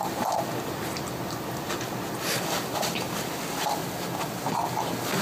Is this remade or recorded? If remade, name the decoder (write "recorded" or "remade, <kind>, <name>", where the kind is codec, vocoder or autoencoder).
recorded